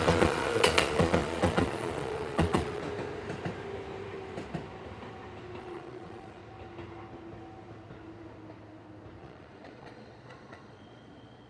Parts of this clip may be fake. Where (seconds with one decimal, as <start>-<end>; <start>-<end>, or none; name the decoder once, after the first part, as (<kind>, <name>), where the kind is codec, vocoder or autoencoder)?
0.0-2.8 (vocoder, Vocos); 5.6-6.4; 9.2-11.5